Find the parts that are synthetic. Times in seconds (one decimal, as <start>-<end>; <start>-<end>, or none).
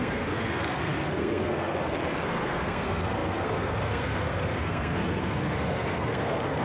0.0-6.6